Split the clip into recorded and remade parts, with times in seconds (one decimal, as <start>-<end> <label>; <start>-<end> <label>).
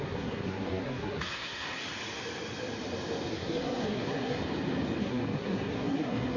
0.0-1.8 remade; 1.8-3.3 recorded; 3.3-4.4 remade; 4.4-5.0 recorded; 5.0-6.4 remade